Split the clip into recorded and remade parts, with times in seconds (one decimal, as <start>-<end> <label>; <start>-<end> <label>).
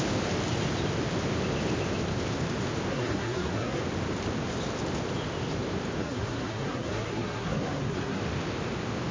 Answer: 0.0-2.9 recorded; 2.9-3.8 remade; 3.8-6.0 recorded; 6.0-8.2 remade; 8.2-9.1 recorded